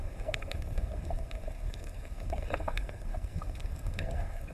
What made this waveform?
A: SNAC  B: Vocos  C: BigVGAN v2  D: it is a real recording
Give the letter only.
A